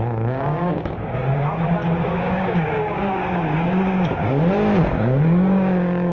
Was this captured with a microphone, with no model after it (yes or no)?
no